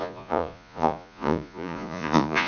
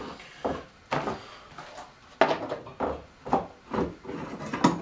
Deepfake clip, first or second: first